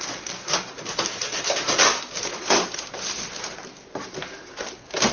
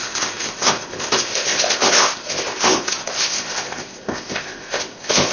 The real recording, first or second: first